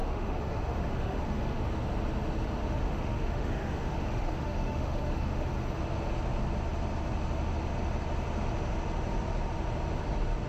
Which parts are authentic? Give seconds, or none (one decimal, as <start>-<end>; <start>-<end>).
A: 1.6-2.6; 5.5-10.5